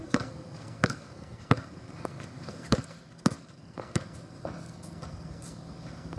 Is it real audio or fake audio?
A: fake